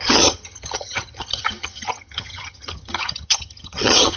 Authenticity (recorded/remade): remade